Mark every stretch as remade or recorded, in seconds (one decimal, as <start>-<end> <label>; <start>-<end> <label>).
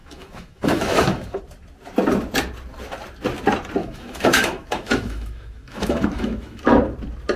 0.0-1.4 remade; 1.4-3.8 recorded; 3.8-6.6 remade; 6.6-7.4 recorded